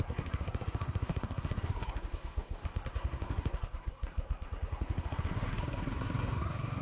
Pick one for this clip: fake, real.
fake